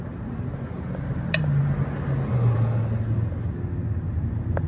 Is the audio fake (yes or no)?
no